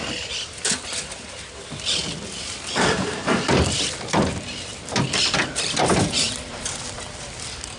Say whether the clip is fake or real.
fake